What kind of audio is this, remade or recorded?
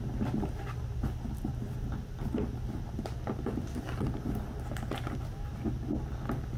recorded